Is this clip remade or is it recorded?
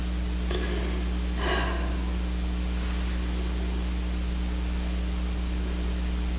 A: recorded